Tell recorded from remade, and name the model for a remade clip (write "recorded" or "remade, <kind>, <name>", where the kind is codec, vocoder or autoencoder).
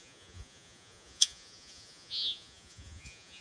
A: remade, vocoder, Vocos